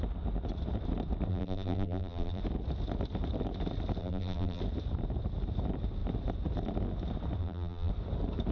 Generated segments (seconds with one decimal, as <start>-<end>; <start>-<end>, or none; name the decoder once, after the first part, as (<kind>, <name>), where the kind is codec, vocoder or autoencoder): 1.3-2.4 (vocoder, BigVGAN v2); 4.0-4.6; 7.4-7.9